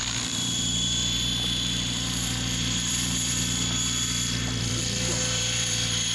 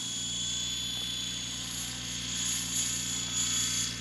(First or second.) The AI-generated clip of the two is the first